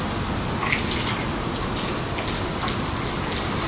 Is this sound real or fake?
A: real